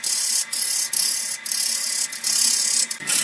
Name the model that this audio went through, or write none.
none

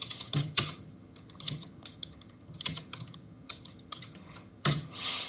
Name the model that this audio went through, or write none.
vocoder, HiFi-GAN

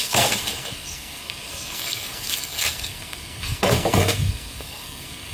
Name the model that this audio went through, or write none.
codec, SNAC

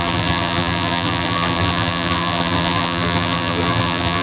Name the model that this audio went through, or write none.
vocoder, BigVGAN v2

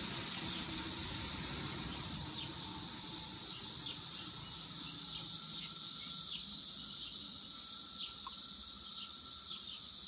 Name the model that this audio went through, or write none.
none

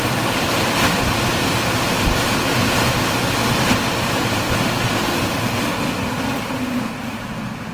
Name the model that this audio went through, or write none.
none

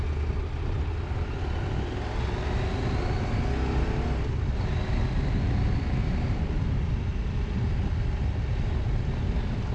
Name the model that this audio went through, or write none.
none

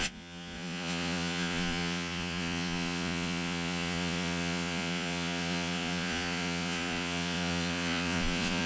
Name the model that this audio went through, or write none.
vocoder, Vocos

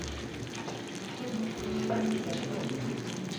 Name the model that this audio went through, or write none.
none